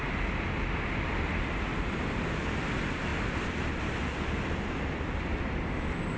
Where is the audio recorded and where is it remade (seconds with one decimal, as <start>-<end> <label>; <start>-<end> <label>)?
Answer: 0.0-6.2 recorded